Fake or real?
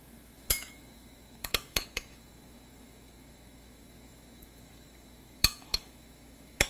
fake